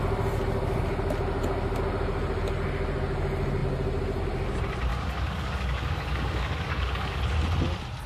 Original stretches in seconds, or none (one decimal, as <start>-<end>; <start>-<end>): 0.0-4.9; 7.2-8.1